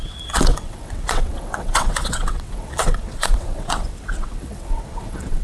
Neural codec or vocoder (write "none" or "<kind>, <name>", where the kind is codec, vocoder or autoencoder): vocoder, WaveNeXt